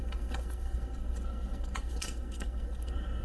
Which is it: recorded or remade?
remade